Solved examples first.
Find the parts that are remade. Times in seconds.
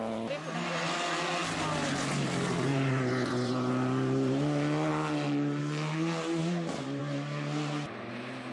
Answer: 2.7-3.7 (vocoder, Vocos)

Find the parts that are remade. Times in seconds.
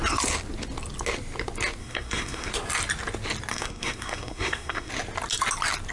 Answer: 1.8-2.5 (codec, SNAC); 3.5-4.9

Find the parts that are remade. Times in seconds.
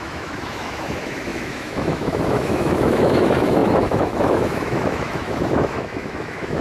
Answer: 0.0-6.6 (autoencoder, DAC-VAE)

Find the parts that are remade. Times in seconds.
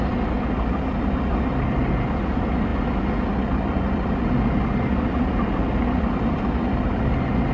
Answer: none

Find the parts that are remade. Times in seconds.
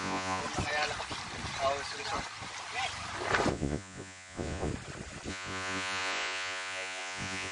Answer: 0.0-0.4 (vocoder, Vocos); 3.5-4.7; 5.3-7.5